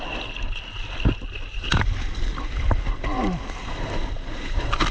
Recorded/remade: recorded